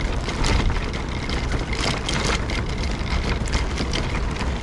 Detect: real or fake real